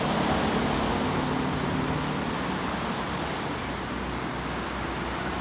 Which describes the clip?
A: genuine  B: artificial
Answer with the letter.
A